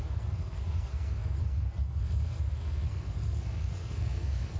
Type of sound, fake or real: fake